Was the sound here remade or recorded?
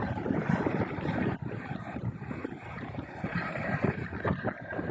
remade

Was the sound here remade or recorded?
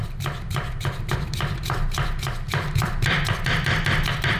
remade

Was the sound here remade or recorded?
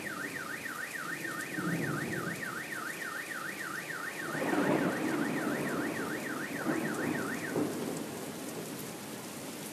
recorded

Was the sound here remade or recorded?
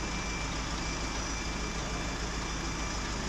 recorded